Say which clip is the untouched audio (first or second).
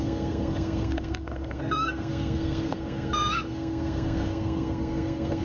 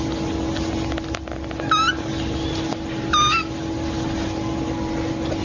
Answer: second